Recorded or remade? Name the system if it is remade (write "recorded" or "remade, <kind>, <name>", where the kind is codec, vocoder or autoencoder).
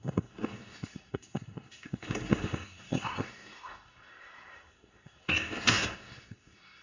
remade, codec, SNAC